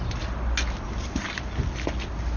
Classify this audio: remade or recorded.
recorded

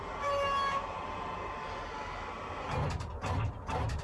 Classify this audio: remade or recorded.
recorded